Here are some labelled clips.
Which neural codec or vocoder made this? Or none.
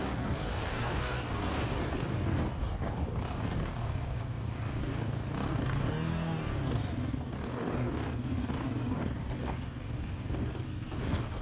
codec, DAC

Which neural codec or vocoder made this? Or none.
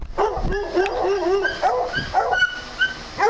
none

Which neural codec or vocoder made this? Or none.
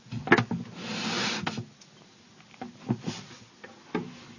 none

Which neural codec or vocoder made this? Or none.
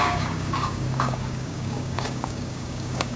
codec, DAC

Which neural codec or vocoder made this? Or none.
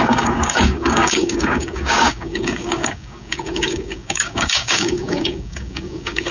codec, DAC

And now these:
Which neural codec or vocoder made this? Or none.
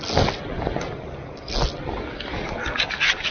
none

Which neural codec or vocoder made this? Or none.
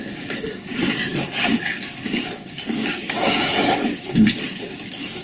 codec, DAC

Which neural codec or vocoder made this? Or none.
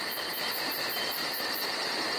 none